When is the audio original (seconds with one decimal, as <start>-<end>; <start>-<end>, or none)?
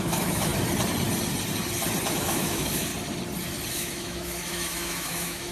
0.5-2.1; 2.9-3.7